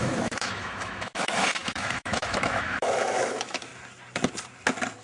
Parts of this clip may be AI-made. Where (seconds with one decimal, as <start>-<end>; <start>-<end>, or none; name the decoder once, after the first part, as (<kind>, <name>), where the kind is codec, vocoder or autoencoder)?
0.0-3.7 (autoencoder, DAC-VAE)